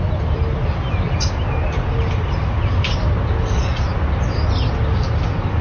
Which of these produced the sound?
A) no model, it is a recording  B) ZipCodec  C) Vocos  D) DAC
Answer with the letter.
A